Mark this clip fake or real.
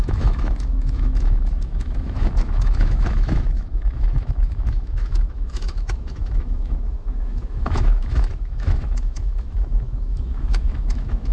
fake